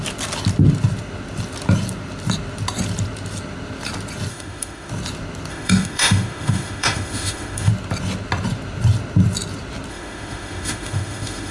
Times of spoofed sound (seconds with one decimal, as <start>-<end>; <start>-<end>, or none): 4.3-4.9; 5.5-7.7; 9.9-11.5